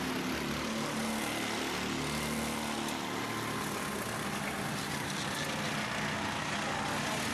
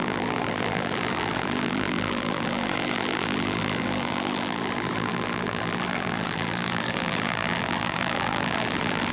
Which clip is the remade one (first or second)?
second